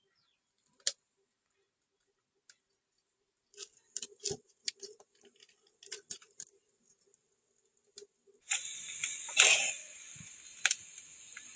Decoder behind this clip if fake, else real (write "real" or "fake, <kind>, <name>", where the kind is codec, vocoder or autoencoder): real